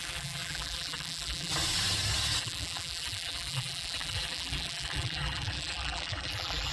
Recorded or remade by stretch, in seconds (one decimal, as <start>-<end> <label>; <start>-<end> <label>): 0.0-1.5 remade; 1.5-2.4 recorded; 2.4-6.7 remade

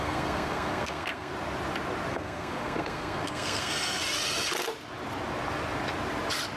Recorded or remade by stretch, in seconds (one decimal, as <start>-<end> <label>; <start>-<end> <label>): 0.0-1.3 remade; 1.3-2.1 recorded; 2.1-4.0 remade; 4.0-6.6 recorded

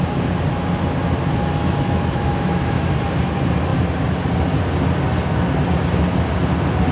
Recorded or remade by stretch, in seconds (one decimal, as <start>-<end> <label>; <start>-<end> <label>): 0.0-1.6 recorded; 1.6-2.9 remade; 2.9-6.9 recorded

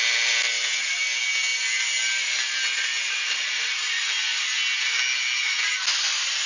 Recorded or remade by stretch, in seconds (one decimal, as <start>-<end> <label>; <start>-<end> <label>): 0.0-6.5 recorded

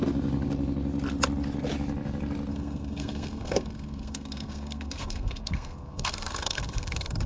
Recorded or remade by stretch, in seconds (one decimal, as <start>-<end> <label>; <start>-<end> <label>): 0.0-2.5 recorded; 2.5-7.3 remade

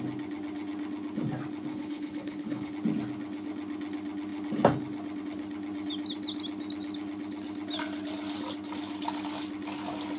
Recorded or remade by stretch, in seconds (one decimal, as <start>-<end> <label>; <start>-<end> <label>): 0.0-1.7 recorded; 1.7-2.7 remade; 2.7-10.2 recorded

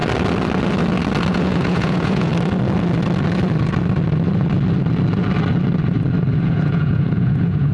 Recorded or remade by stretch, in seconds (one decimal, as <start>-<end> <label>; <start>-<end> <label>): 0.0-1.3 recorded; 1.3-2.3 remade; 2.3-6.4 recorded; 6.4-7.7 remade